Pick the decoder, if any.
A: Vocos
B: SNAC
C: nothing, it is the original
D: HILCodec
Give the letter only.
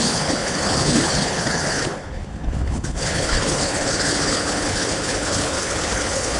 D